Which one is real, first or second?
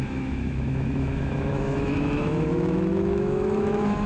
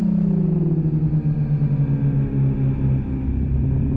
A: second